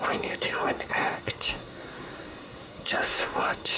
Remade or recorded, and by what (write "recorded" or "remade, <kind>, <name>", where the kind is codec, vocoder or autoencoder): remade, codec, SNAC